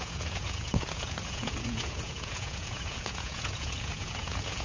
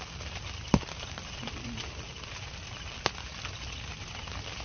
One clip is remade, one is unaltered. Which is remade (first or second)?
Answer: first